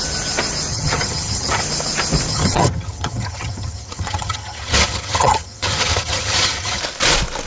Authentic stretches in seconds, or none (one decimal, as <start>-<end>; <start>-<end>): 0.0-0.7; 1.6-2.3; 6.8-7.5